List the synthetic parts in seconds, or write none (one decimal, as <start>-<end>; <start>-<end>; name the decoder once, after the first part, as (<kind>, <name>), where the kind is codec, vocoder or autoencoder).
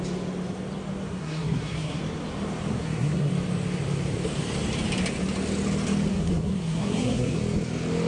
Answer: 1.1-2.0 (codec, SNAC); 2.7-3.3; 6.1-7.4